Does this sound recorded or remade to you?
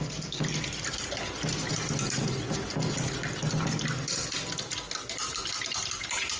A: recorded